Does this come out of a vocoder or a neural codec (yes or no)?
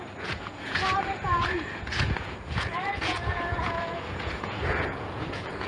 yes